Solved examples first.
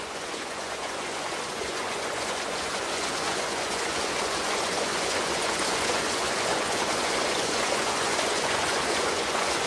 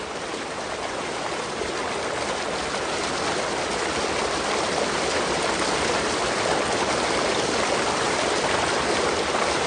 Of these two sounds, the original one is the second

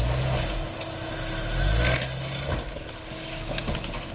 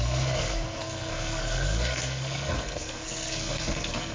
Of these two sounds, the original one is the first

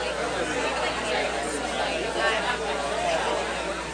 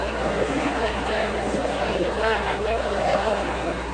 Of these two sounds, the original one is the first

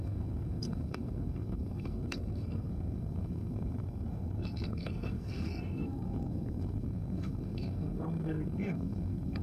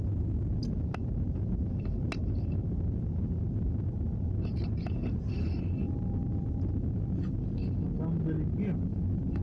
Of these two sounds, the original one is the second